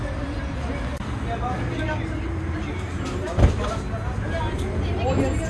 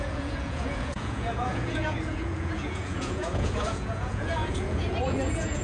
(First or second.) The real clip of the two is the first